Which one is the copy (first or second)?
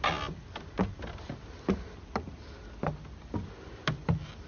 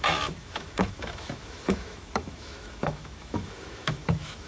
second